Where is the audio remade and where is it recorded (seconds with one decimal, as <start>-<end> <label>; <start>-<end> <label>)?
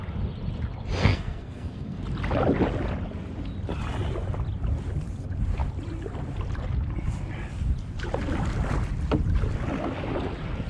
0.0-1.0 recorded; 1.0-2.0 remade; 2.0-10.7 recorded